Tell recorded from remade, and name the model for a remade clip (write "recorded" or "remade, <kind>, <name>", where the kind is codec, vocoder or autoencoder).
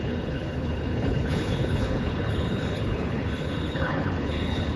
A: remade, codec, HILCodec